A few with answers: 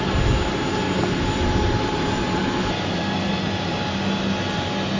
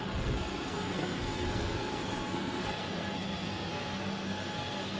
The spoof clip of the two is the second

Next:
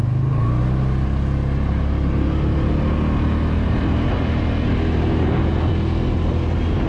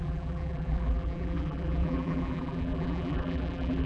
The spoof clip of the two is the second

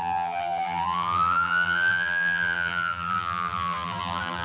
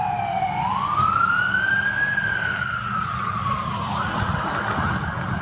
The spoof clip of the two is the first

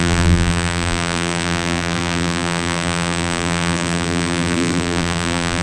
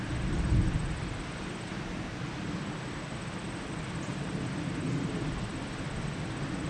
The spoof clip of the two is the first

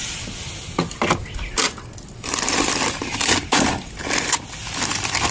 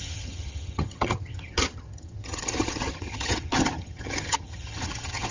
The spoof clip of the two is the second